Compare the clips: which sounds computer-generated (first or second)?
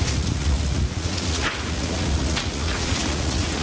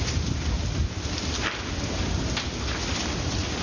first